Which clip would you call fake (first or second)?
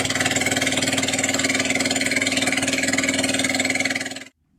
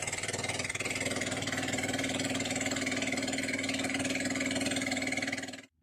second